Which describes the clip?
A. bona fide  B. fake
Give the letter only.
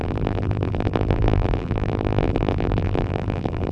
B